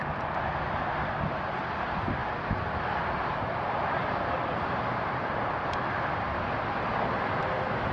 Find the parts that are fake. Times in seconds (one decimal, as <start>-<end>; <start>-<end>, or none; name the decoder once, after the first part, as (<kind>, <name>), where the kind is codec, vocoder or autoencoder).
none